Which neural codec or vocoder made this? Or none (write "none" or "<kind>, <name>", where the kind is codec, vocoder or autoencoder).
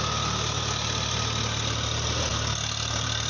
none